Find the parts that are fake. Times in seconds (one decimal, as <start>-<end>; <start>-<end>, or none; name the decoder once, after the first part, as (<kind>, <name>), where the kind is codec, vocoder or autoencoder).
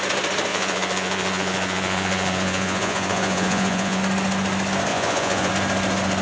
0.5-4.0 (vocoder, Vocos); 4.9-5.5